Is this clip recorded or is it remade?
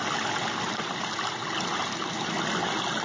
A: recorded